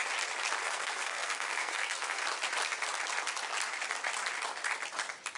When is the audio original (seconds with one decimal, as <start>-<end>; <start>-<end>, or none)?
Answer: 0.0-0.6; 2.2-5.4

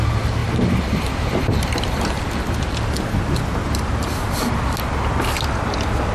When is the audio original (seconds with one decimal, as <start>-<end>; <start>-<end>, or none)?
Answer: 0.0-0.4; 2.2-3.6; 4.6-6.1

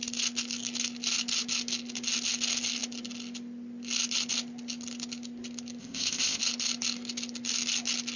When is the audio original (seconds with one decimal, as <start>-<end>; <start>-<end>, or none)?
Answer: 0.0-5.8; 6.4-8.2

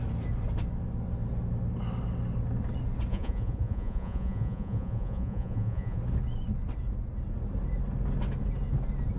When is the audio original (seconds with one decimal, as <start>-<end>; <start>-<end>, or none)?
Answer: 0.0-3.1; 6.0-9.2